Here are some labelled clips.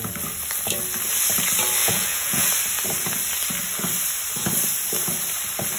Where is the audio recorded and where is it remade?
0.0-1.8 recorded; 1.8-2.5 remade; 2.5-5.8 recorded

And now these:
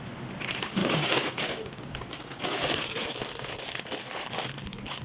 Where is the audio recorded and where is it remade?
0.0-0.8 recorded; 0.8-2.6 remade; 2.6-5.0 recorded